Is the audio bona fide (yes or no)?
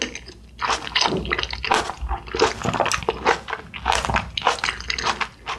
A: yes